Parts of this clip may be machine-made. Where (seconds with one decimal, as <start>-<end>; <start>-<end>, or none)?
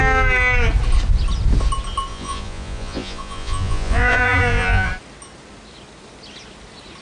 2.1-4.9